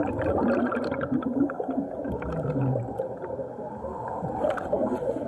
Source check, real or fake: real